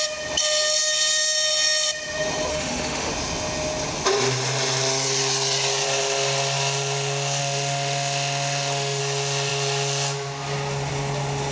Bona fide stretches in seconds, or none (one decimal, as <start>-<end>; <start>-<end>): 0.0-2.5; 3.1-7.4; 9.0-11.5